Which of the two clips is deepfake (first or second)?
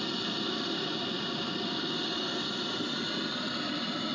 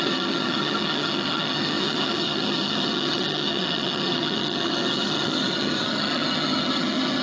second